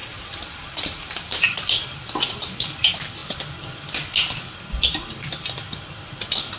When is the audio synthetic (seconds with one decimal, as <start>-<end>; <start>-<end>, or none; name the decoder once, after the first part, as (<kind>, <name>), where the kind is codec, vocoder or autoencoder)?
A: 0.0-2.1 (vocoder, BigVGAN v2)